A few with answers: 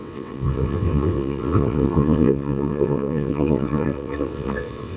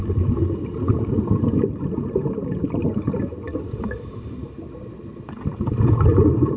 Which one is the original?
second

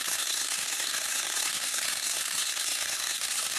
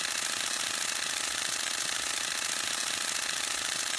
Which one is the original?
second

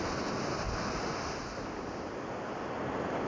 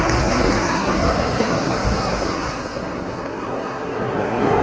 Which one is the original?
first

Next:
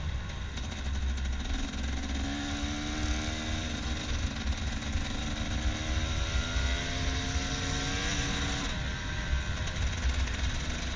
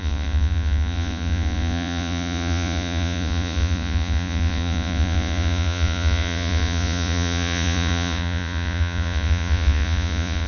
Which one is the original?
first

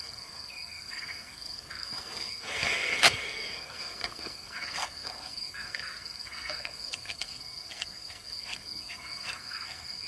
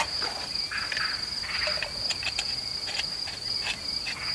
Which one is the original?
second